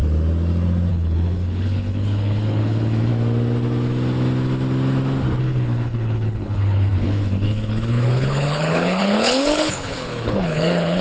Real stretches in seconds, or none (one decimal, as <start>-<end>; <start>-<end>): 0.0-0.9; 3.1-5.4